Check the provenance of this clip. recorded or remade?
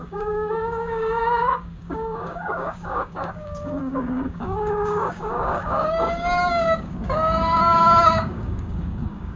remade